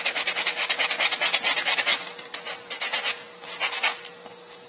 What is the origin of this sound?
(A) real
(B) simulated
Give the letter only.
A